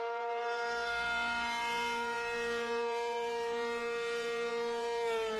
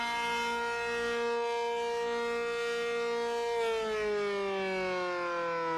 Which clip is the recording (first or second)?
second